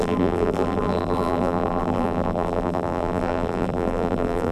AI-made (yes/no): yes